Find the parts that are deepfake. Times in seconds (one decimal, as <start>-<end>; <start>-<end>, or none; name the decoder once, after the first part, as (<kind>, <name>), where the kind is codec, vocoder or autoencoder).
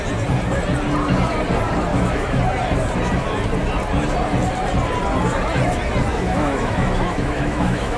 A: 1.9-2.4 (autoencoder, DAC-VAE); 6.1-8.0